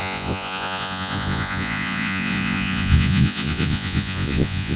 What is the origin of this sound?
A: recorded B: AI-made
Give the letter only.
B